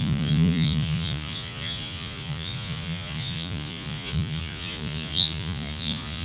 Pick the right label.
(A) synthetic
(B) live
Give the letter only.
A